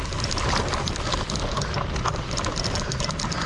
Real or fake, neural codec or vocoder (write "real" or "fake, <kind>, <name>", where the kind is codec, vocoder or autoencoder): real